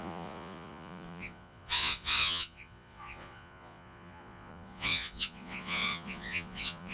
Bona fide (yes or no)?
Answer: no